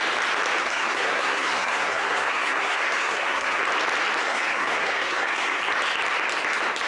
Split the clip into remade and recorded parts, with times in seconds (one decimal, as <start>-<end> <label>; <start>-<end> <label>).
0.0-0.6 recorded; 0.6-3.6 remade; 3.6-4.2 recorded; 4.2-5.6 remade; 5.6-6.9 recorded